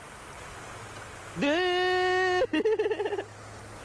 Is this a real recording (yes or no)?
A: yes